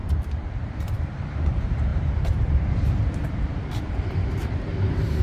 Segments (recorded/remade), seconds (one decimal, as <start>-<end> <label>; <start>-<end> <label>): 0.0-0.5 recorded; 0.5-5.2 remade